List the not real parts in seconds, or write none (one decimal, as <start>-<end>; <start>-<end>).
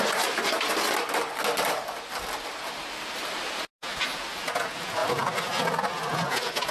none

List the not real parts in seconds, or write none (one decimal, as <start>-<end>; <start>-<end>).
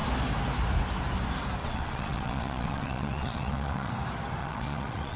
1.6-3.9; 4.4-5.2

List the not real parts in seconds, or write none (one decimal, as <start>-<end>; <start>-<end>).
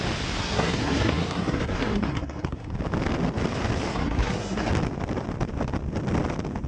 0.4-2.7; 3.9-4.7